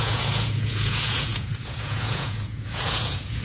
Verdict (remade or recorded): remade